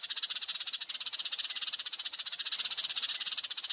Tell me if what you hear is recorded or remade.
recorded